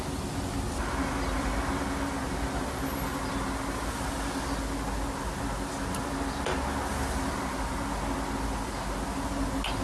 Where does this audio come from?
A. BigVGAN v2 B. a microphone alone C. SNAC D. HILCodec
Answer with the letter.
B